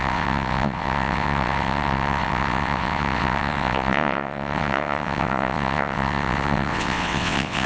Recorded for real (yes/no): no